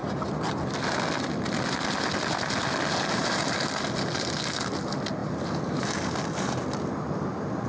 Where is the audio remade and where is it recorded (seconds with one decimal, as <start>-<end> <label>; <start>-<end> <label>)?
0.0-7.7 recorded